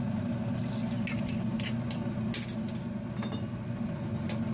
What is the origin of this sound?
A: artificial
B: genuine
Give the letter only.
B